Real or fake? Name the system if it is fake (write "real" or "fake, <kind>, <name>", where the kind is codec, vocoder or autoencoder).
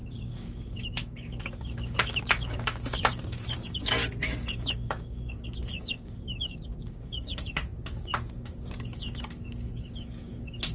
fake, codec, DAC